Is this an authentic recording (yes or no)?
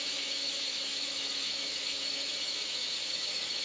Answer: no